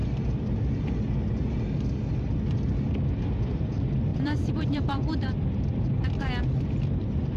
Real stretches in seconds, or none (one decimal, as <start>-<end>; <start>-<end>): 0.0-4.1; 6.3-7.4